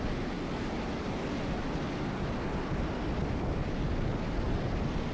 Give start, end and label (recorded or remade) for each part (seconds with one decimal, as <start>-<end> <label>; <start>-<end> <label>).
0.0-5.1 recorded